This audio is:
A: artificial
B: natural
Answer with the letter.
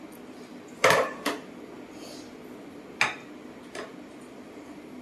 B